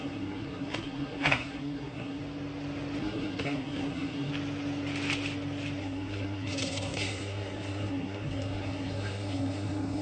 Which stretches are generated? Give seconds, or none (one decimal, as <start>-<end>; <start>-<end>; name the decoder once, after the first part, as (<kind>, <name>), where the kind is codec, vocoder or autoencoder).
0.0-2.2 (codec, SNAC); 3.0-4.3; 5.8-10.0